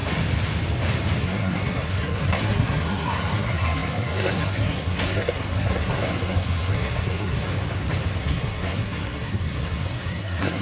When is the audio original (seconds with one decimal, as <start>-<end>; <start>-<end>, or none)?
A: 0.0-1.2; 7.5-8.2

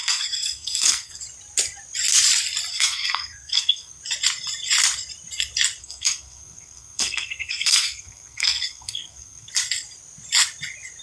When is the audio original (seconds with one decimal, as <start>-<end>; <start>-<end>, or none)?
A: 1.2-2.7; 4.0-5.8; 9.5-11.0

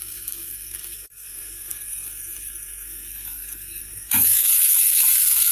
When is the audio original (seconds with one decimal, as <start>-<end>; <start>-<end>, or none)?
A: none

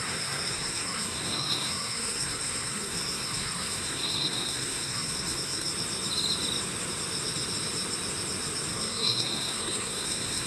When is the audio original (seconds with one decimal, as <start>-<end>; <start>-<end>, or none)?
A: 5.7-8.7

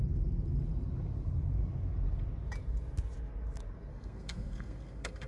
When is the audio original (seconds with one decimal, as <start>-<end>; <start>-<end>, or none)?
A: 0.0-3.9

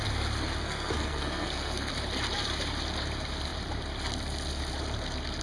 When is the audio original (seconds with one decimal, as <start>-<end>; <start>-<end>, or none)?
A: 0.0-0.6; 1.9-5.4

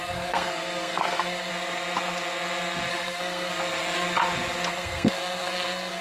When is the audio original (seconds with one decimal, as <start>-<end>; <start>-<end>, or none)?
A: 1.5-2.9; 3.5-4.7

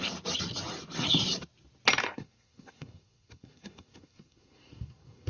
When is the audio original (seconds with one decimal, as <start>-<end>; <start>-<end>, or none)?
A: 0.0-2.0